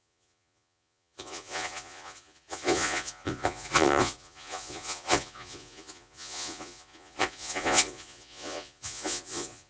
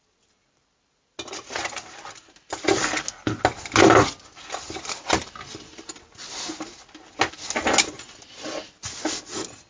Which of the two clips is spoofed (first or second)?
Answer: first